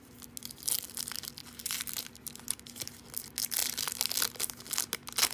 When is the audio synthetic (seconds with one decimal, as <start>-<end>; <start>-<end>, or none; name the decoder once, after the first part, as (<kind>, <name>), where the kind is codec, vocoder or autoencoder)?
none